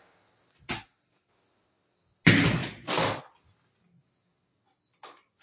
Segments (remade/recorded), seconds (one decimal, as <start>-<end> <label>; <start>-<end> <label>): 0.0-5.4 recorded